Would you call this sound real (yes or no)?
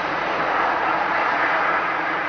no